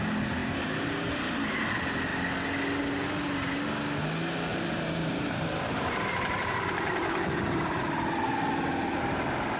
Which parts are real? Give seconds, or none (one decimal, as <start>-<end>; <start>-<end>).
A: 0.0-4.5; 7.8-9.6